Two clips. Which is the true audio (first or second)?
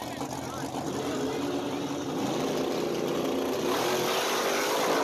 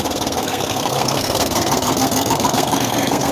first